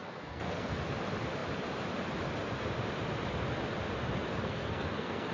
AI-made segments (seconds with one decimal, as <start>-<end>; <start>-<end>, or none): 0.0-0.8; 4.3-5.3